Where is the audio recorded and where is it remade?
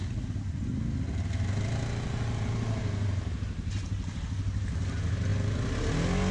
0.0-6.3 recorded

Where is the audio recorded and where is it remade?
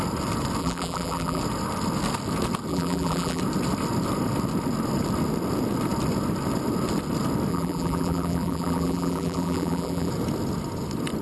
0.0-0.6 recorded; 0.6-1.4 remade; 1.4-2.7 recorded; 2.7-3.4 remade; 3.4-7.5 recorded; 7.5-10.1 remade; 10.1-11.2 recorded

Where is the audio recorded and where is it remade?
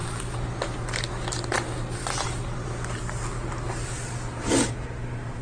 0.0-5.4 recorded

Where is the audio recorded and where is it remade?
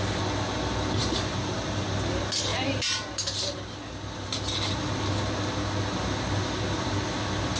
0.0-1.0 recorded; 1.0-1.8 remade; 1.8-2.5 recorded; 2.5-4.9 remade; 4.9-7.6 recorded